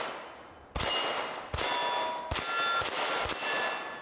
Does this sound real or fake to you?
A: real